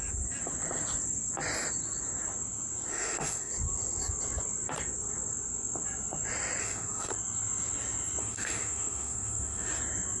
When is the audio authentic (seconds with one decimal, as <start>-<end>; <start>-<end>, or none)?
0.0-2.9; 3.5-6.6; 7.1-8.2; 9.7-10.2